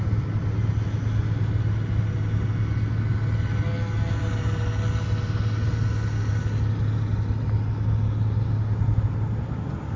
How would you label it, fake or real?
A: real